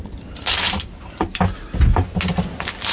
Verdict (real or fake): real